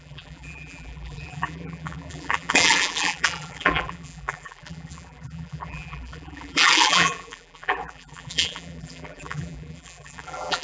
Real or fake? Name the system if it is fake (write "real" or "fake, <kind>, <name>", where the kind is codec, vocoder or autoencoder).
fake, vocoder, BigVGAN v2